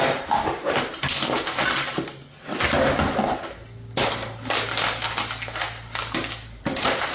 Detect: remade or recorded recorded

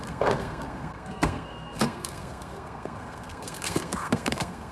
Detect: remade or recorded remade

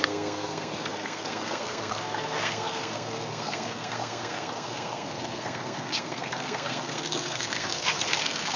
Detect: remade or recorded remade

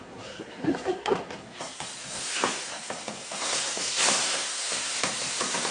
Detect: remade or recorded remade